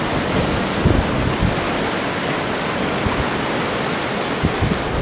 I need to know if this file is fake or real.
real